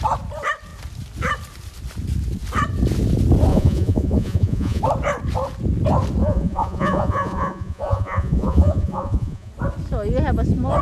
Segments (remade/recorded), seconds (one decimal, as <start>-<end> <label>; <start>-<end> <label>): 0.0-3.5 recorded; 3.5-4.8 remade; 4.8-6.2 recorded; 6.2-9.5 remade; 9.5-10.8 recorded